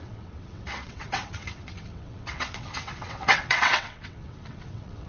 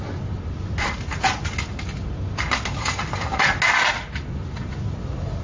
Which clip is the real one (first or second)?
second